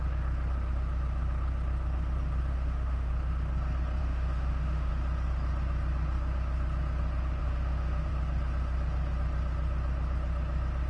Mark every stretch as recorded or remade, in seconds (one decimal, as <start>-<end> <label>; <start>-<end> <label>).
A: 0.0-2.5 recorded; 2.5-3.1 remade; 3.1-4.0 recorded; 4.0-4.9 remade; 4.9-7.4 recorded; 7.4-8.1 remade; 8.1-10.9 recorded